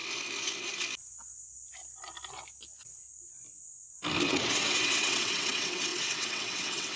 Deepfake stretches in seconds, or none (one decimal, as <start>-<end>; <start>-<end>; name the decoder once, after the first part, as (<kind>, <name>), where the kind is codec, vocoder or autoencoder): 4.2-7.0 (vocoder, WaveNeXt)